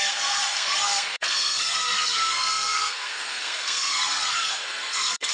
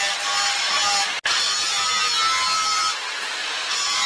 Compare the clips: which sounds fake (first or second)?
first